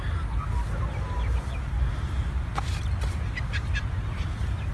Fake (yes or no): no